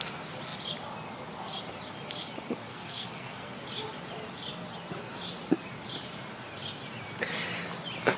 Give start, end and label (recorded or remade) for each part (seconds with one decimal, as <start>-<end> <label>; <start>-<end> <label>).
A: 0.0-2.7 recorded; 2.7-3.5 remade; 3.5-8.2 recorded